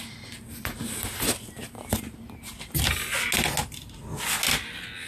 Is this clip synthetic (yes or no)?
no